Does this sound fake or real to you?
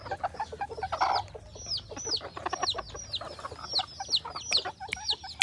real